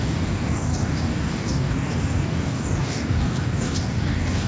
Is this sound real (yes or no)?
no